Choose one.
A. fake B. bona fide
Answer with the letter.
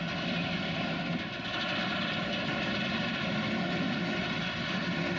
B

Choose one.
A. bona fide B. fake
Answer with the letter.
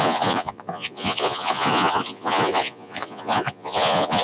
B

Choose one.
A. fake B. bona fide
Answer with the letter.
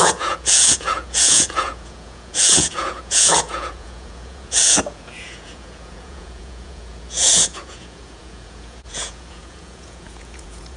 A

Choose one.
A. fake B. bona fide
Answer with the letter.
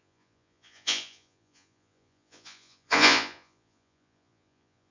A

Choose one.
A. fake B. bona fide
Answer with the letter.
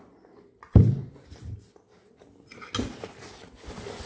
B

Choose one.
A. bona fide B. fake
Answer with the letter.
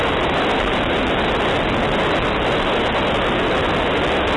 A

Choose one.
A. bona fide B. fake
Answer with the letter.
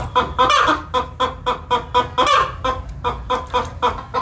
A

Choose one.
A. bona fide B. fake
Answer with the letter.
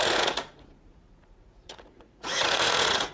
B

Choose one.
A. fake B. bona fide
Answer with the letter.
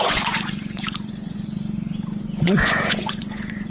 A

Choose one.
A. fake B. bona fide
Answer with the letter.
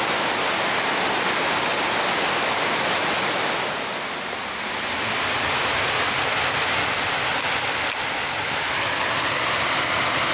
B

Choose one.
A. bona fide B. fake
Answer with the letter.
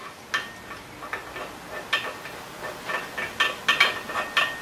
A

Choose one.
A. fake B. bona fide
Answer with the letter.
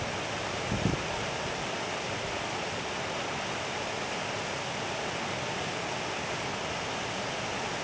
B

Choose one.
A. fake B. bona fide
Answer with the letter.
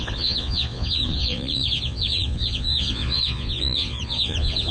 A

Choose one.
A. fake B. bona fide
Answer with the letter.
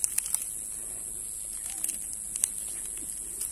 B